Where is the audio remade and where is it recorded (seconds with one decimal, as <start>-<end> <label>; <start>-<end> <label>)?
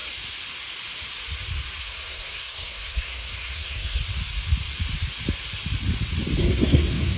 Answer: 0.0-1.8 recorded; 1.8-4.0 remade; 4.0-6.4 recorded; 6.4-7.2 remade